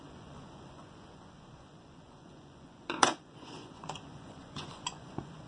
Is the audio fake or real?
fake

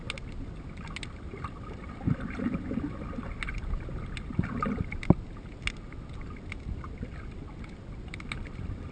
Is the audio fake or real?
real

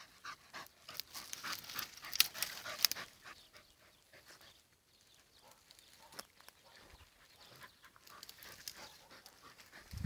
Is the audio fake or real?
real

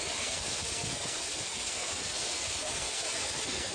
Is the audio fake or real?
fake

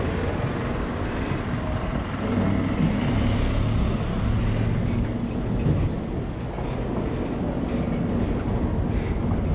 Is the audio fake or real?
real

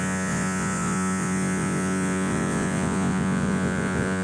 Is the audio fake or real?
fake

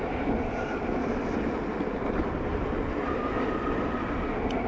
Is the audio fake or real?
real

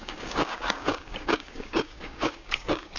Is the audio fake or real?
fake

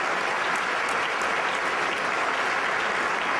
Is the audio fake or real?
real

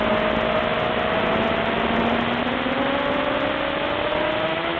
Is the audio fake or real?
real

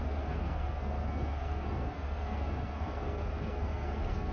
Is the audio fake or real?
fake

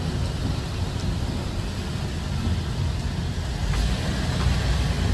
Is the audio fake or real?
real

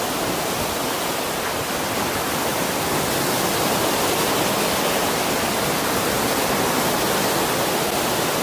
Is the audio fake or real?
real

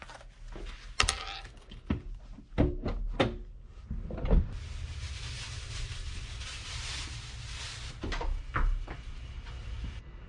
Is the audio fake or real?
real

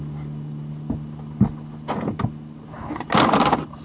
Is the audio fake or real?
real